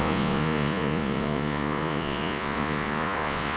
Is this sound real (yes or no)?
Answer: no